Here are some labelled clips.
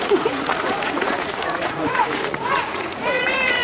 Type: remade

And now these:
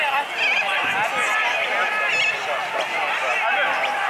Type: recorded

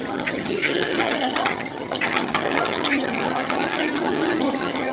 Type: remade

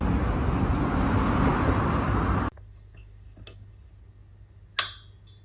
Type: recorded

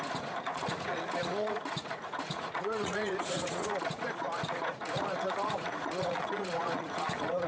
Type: remade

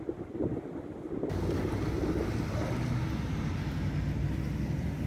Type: recorded